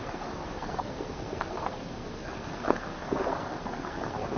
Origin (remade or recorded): remade